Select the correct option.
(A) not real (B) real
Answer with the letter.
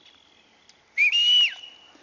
B